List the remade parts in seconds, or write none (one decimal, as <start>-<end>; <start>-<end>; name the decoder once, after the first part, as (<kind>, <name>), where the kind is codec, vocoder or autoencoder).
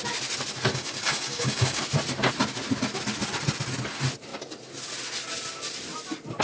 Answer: 0.7-1.8 (codec, DAC)